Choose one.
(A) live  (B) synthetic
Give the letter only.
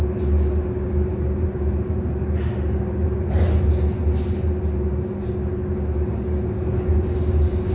A